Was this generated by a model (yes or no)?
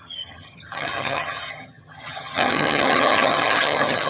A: yes